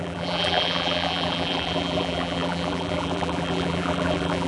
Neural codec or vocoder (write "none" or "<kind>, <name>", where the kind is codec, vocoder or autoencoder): vocoder, BigVGAN v2